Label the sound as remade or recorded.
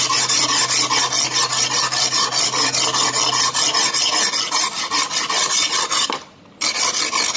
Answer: recorded